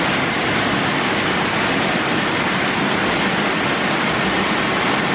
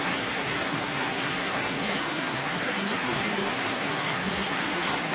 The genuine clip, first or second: first